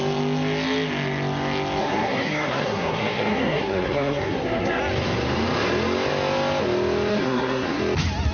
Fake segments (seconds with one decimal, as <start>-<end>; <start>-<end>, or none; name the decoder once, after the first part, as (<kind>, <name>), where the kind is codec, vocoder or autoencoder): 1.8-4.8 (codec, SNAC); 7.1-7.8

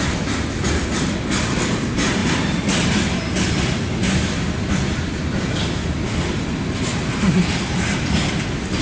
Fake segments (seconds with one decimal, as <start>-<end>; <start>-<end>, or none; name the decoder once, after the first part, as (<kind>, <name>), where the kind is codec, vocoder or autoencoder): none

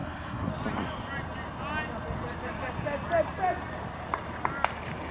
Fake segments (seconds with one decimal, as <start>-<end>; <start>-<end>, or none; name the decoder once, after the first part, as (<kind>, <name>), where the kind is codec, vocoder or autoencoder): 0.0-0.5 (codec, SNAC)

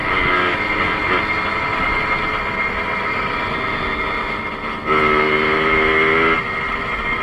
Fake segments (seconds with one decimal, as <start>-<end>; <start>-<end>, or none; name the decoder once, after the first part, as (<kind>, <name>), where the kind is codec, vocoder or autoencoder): none